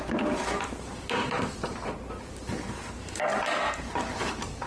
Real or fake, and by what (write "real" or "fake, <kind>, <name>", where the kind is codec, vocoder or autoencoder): fake, vocoder, BigVGAN v2